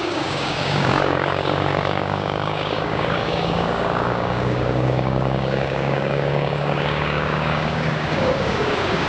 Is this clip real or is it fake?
fake